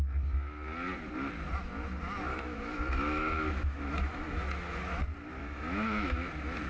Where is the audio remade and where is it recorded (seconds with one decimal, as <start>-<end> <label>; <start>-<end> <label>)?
0.0-2.3 recorded; 2.3-4.8 remade; 4.8-5.4 recorded; 5.4-6.3 remade; 6.3-6.7 recorded